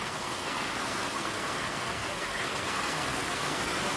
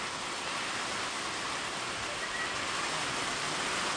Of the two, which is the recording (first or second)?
second